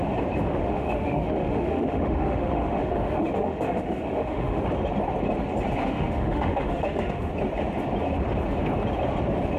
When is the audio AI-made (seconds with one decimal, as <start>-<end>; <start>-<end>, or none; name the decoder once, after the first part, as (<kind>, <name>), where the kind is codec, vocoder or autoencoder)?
0.6-4.6 (autoencoder, DAC-VAE); 5.8-7.3